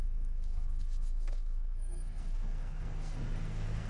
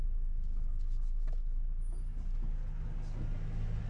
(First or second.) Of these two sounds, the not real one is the first